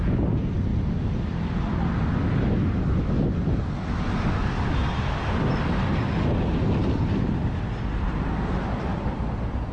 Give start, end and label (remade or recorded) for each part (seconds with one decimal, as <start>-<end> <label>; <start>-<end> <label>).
0.0-6.8 recorded; 6.8-9.2 remade; 9.2-9.7 recorded